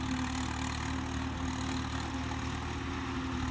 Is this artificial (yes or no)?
no